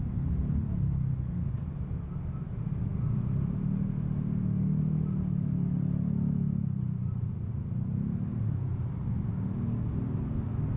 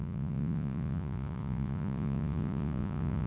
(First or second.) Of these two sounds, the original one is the first